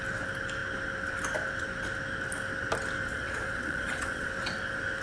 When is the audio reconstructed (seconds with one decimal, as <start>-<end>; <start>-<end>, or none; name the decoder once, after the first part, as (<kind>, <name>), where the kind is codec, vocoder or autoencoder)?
3.1-4.3 (vocoder, Vocos)